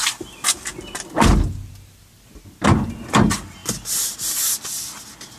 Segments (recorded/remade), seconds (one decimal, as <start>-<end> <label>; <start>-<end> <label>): 0.0-5.4 recorded